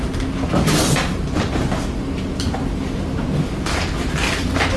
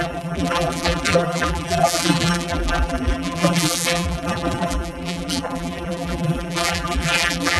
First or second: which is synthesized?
second